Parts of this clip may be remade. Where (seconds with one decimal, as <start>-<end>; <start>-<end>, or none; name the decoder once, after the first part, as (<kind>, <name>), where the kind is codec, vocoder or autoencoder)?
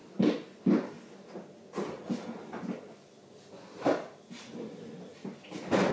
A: none